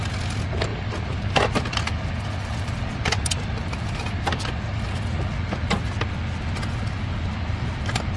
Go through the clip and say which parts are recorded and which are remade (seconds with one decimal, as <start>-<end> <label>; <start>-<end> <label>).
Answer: 0.0-0.7 recorded; 0.7-4.5 remade; 4.5-8.2 recorded